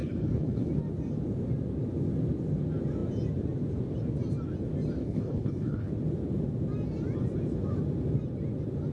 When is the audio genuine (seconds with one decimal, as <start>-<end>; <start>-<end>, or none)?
0.7-5.0; 5.9-8.9